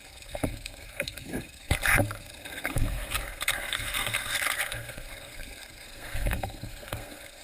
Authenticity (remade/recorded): remade